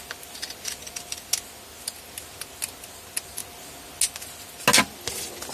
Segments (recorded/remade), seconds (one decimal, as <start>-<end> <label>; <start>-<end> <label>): 0.0-5.5 recorded